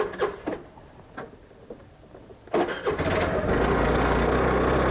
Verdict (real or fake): real